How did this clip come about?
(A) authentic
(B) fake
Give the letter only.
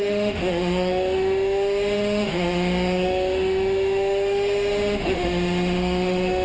B